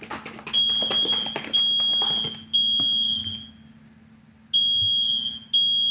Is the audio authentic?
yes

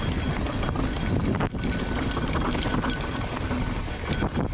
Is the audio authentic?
yes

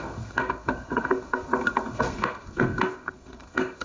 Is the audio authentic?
no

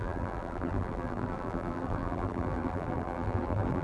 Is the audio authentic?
no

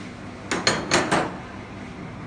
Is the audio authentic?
yes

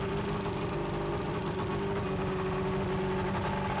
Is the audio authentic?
yes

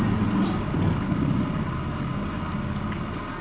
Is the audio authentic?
yes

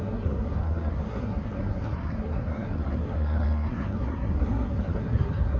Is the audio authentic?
no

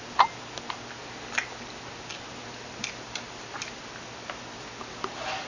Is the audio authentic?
yes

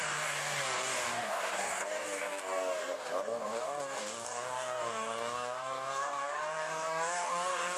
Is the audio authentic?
no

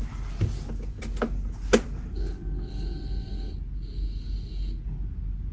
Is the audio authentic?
yes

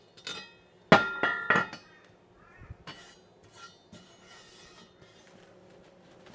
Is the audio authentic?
yes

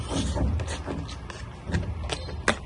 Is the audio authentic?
yes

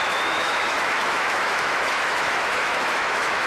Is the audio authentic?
no